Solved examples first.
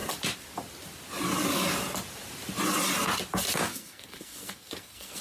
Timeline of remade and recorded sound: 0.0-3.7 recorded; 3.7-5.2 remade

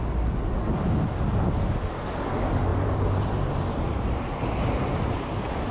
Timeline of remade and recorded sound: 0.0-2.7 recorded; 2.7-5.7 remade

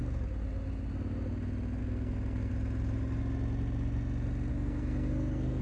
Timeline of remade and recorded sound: 0.0-1.8 recorded; 1.8-2.5 remade; 2.5-4.5 recorded; 4.5-5.6 remade